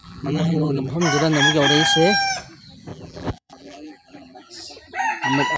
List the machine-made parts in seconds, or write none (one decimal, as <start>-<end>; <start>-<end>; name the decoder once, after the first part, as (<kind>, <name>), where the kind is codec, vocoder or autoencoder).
0.0-0.9 (vocoder, BigVGAN v2); 2.9-4.5